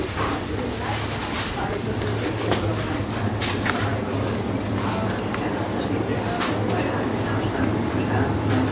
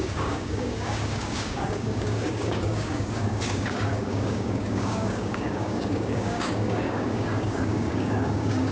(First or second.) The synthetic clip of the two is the second